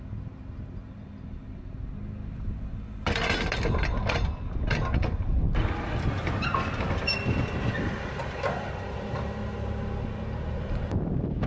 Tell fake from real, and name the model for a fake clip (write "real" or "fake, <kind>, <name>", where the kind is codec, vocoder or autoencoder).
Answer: real